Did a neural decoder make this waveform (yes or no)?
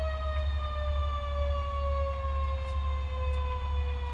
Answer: no